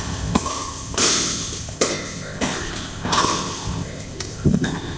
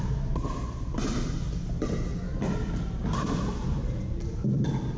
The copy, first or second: first